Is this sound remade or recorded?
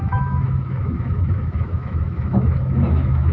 remade